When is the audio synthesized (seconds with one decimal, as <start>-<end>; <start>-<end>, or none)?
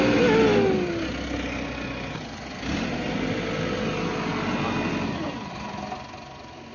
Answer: none